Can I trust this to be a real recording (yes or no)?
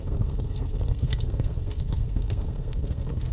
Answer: no